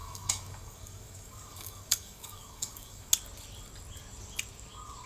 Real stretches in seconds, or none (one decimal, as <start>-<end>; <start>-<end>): 3.1-5.1